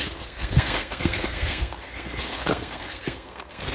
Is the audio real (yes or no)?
no